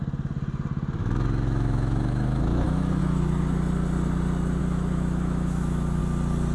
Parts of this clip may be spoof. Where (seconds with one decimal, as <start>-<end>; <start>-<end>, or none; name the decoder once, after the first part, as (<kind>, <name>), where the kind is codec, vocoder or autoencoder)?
1.0-3.0 (autoencoder, DAC-VAE); 4.6-6.0